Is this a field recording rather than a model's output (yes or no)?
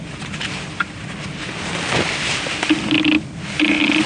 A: yes